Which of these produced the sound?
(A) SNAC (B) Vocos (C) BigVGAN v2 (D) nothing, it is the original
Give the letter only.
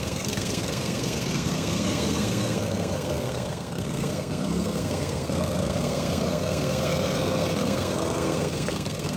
A